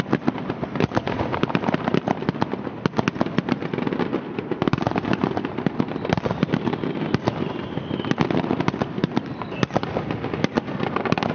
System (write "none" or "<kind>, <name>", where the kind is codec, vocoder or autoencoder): none